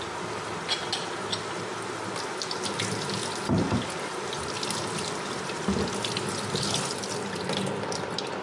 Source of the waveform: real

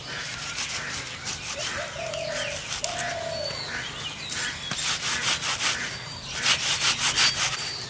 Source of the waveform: real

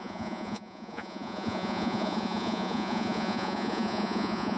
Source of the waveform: fake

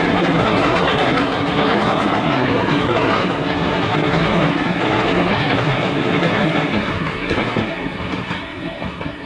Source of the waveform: fake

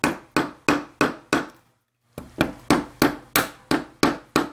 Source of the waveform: real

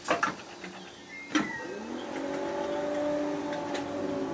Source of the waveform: real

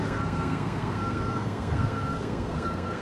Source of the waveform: fake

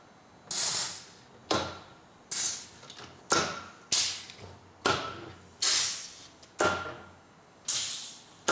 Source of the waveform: real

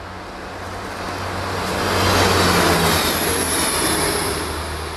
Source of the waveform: real